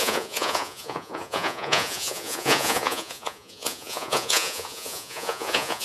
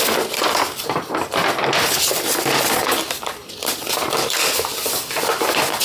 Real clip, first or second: second